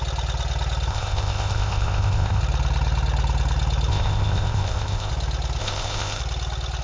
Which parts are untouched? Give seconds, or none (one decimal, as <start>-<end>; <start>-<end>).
0.0-0.9; 2.4-3.9; 5.1-5.6; 6.2-6.8